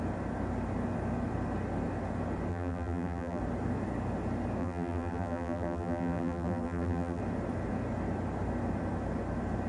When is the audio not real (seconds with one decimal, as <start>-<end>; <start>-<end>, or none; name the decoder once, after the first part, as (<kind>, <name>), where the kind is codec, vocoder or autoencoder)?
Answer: 2.5-3.4 (vocoder, BigVGAN v2); 4.6-7.2